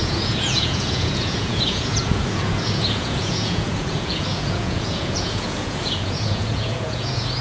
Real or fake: fake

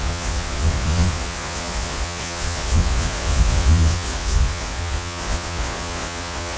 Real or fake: fake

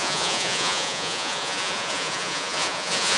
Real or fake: fake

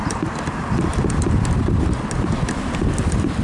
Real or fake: real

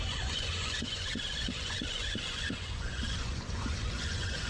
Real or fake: fake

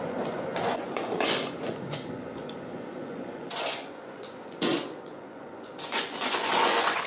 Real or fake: fake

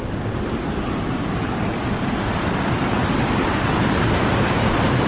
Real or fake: real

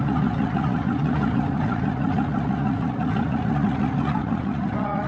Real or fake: fake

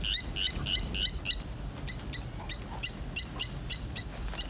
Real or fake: real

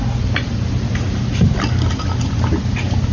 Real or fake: real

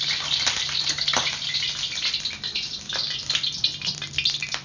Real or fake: real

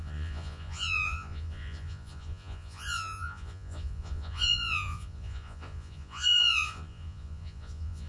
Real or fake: fake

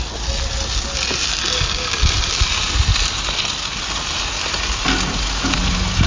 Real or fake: real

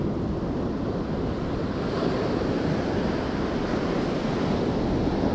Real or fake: real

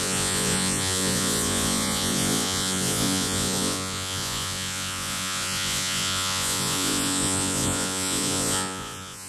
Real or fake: fake